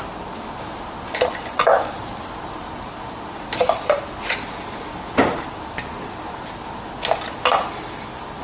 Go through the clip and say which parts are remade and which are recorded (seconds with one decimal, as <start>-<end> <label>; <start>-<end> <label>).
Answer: 0.0-1.3 recorded; 1.3-2.0 remade; 2.0-8.4 recorded